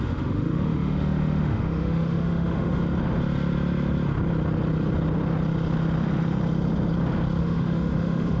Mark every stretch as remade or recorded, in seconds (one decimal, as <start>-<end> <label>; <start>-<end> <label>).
0.0-2.8 remade; 2.8-7.4 recorded; 7.4-8.4 remade